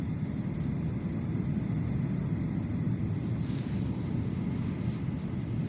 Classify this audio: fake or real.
real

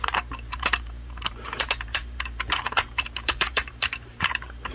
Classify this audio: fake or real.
fake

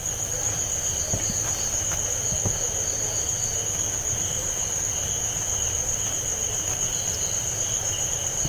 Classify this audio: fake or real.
real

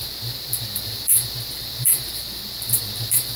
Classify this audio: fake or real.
fake